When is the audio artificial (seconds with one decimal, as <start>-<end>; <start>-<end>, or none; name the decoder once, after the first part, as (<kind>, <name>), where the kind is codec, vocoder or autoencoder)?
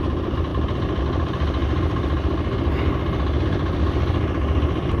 0.0-1.6 (vocoder, BigVGAN v2); 3.4-5.0